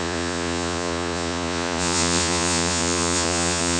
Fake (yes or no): yes